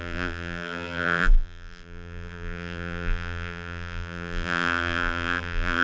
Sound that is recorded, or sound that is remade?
remade